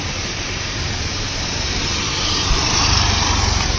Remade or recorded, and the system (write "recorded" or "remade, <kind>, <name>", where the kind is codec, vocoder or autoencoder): remade, vocoder, BigVGAN v2